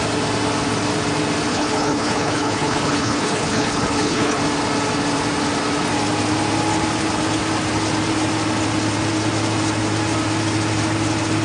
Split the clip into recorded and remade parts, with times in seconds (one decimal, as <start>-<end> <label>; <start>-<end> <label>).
0.0-1.5 recorded; 1.5-4.4 remade; 4.4-11.4 recorded